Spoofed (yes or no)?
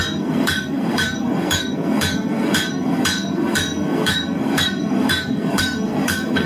yes